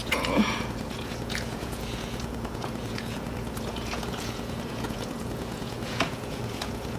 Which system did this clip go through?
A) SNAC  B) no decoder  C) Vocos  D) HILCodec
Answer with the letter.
C